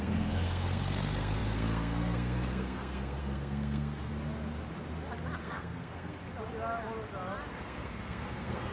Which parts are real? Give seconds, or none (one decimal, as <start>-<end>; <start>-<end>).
4.1-5.4; 6.2-7.5